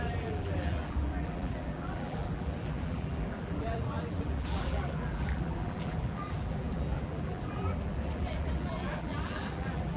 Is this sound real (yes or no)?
no